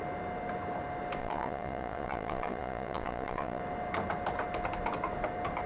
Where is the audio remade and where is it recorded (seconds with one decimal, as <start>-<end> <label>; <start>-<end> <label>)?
0.0-1.2 recorded; 1.2-3.6 remade; 3.6-5.7 recorded